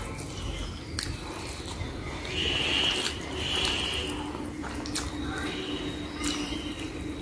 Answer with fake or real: real